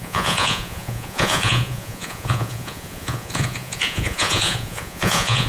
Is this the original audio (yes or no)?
no